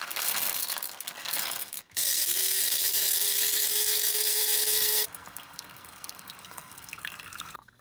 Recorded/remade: remade